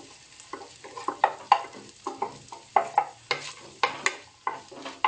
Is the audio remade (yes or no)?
no